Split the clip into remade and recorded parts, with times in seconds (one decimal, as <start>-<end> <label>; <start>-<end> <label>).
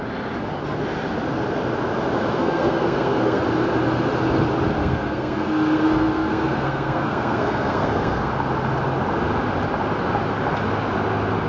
0.0-2.3 recorded; 2.3-3.4 remade; 3.4-4.8 recorded; 4.8-8.3 remade; 8.3-11.5 recorded